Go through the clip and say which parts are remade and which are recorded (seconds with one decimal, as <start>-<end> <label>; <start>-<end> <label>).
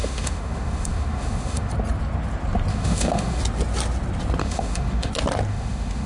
0.0-1.7 remade; 1.7-2.7 recorded; 2.7-3.4 remade; 3.4-4.4 recorded; 4.4-5.1 remade; 5.1-5.5 recorded; 5.5-6.1 remade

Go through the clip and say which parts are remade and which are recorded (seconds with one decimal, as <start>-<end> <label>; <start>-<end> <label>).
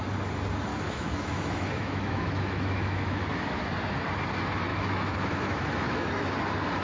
0.0-0.7 recorded; 0.7-3.6 remade; 3.6-4.7 recorded; 4.7-6.3 remade; 6.3-6.8 recorded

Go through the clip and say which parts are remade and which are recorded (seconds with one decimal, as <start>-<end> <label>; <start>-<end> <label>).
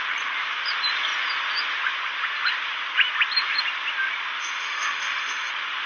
0.0-4.4 recorded; 4.4-5.5 remade; 5.5-5.9 recorded